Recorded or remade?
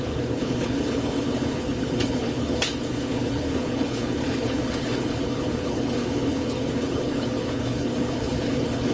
remade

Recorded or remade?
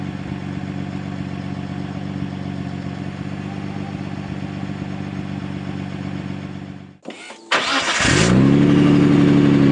recorded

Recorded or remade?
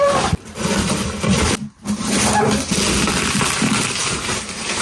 recorded